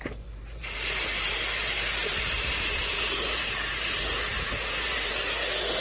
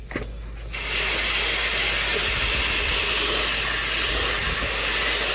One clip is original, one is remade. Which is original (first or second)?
second